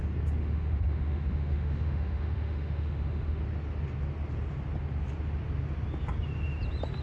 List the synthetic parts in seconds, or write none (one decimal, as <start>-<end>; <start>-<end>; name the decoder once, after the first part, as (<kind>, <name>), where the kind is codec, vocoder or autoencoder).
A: 0.4-3.4 (autoencoder, DAC-VAE)